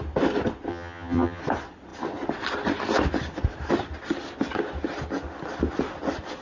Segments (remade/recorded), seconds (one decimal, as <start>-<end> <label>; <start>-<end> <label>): 0.0-0.7 recorded; 0.7-1.4 remade; 1.4-6.4 recorded